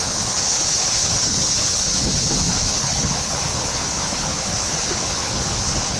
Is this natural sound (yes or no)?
no